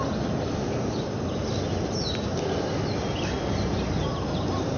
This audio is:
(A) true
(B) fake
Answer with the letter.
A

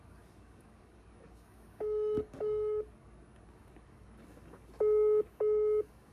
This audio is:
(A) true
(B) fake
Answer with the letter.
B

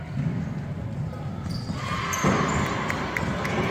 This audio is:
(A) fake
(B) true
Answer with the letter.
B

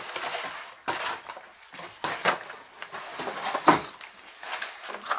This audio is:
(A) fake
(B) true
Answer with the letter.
A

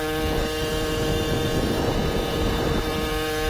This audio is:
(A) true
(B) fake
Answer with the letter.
A